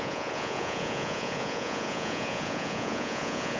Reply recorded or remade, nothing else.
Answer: remade